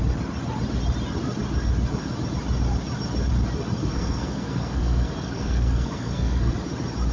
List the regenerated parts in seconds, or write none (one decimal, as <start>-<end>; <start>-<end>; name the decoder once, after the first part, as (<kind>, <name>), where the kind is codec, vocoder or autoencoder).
3.8-6.5 (codec, SNAC)